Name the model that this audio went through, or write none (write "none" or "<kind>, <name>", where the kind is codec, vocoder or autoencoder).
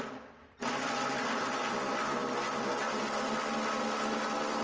none